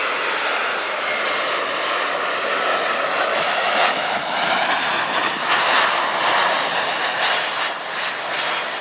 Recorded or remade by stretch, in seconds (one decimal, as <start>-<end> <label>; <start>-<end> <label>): 0.0-3.3 recorded; 3.3-4.7 remade; 4.7-8.8 recorded